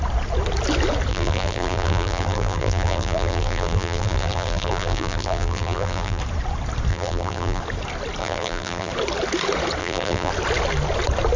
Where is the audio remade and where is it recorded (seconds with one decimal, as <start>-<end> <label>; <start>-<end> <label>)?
0.0-1.1 recorded; 1.1-6.2 remade; 6.2-6.9 recorded; 6.9-7.6 remade; 7.6-8.2 recorded; 8.2-8.9 remade; 8.9-9.8 recorded; 9.8-10.3 remade; 10.3-11.4 recorded